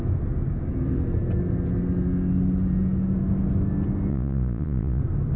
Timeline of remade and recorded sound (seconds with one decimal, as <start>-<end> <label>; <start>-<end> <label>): 0.0-4.1 recorded; 4.1-5.0 remade; 5.0-5.4 recorded